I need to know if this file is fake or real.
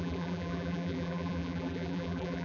fake